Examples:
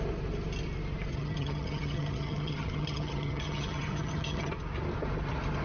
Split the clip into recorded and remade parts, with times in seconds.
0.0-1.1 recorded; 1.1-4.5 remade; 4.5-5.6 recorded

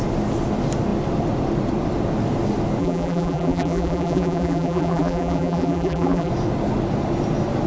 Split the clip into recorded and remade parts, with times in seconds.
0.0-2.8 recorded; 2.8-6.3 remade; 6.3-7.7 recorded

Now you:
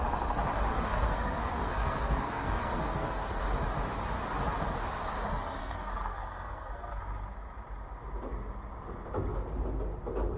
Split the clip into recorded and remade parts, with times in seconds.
0.0-0.7 recorded; 0.7-3.4 remade; 3.4-5.6 recorded; 5.6-7.0 remade; 7.0-10.4 recorded

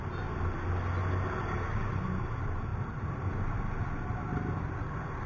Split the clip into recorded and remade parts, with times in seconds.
0.0-5.3 recorded

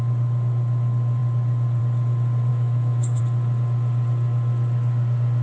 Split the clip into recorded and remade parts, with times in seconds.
0.0-2.5 recorded; 2.5-3.2 remade; 3.2-5.4 recorded

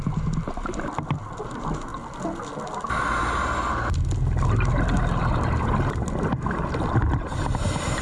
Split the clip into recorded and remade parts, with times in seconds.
0.0-1.9 remade; 1.9-6.3 recorded; 6.3-8.0 remade